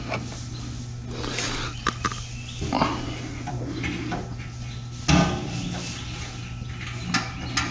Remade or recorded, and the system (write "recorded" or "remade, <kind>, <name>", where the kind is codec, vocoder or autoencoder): recorded